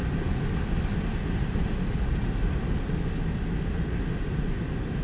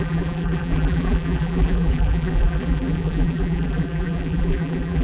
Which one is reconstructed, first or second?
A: second